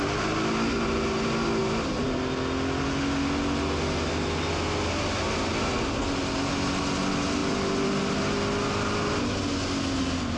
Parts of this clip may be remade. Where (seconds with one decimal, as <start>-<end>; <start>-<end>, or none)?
none